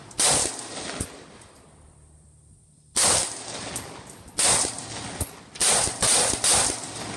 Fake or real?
real